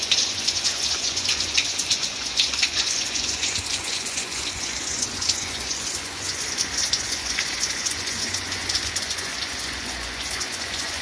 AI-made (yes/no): yes